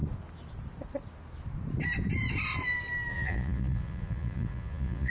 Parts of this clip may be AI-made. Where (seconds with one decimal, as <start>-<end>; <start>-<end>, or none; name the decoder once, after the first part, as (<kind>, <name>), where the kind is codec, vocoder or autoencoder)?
3.1-5.1 (vocoder, Vocos)

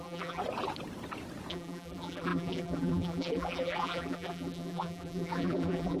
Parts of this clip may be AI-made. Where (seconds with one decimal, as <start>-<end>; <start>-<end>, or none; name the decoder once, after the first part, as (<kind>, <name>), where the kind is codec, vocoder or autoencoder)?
0.0-0.4 (vocoder, BigVGAN v2); 1.5-6.0

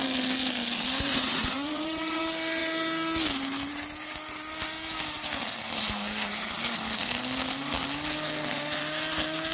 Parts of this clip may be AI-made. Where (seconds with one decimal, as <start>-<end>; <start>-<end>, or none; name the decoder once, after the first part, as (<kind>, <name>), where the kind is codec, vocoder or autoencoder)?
1.1-2.2 (vocoder, WaveNeXt)

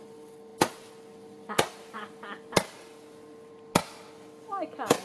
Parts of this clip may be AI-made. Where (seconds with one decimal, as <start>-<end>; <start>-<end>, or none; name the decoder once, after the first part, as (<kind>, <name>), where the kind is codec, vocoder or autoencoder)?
none

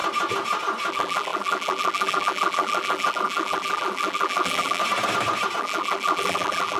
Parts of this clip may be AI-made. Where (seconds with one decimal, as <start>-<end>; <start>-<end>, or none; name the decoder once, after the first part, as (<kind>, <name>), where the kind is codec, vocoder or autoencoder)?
0.9-4.8 (vocoder, BigVGAN v2); 5.6-6.8